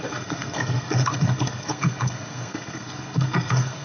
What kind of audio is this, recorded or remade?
remade